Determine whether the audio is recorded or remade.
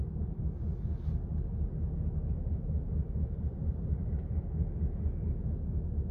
recorded